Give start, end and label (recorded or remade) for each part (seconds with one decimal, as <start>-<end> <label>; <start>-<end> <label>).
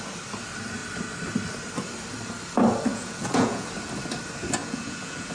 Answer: 0.0-2.9 recorded; 2.9-3.7 remade; 3.7-4.6 recorded; 4.6-5.3 remade